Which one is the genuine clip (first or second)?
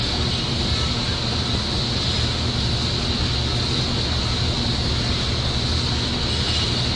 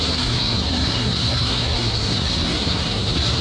first